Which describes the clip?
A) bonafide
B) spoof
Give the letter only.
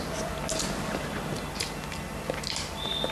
A